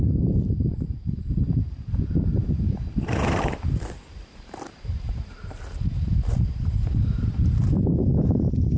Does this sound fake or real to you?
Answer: fake